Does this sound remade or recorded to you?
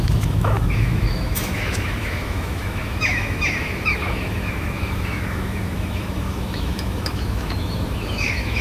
remade